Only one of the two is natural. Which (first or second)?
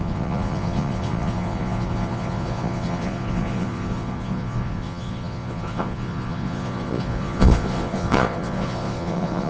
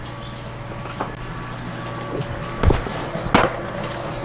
second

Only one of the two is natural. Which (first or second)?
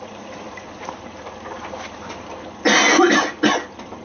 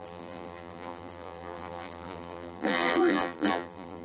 first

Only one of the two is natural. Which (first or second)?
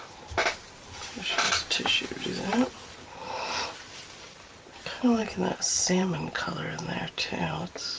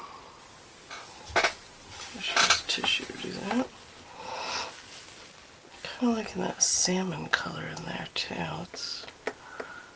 second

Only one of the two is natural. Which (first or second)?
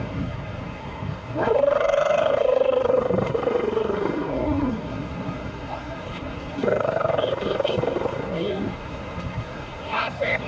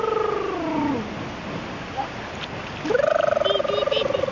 second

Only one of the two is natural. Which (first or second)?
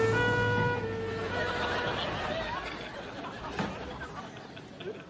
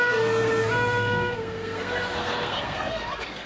first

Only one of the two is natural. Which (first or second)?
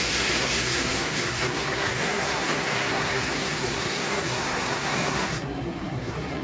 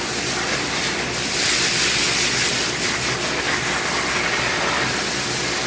second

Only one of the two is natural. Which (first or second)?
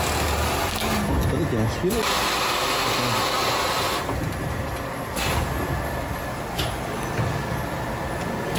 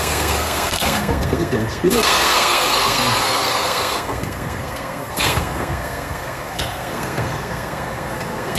first